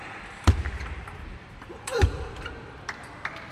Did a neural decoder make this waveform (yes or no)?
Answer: yes